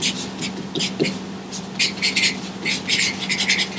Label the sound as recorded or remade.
recorded